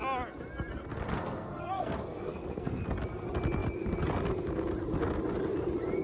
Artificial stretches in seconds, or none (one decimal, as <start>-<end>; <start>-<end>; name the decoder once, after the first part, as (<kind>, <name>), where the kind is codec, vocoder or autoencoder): 1.1-2.8 (codec, SNAC)